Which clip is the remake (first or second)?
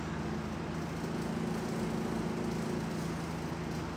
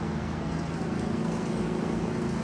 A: second